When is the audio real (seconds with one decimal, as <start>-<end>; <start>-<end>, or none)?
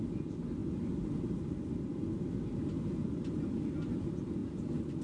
0.0-5.0